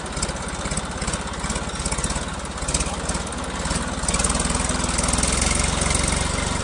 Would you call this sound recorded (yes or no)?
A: yes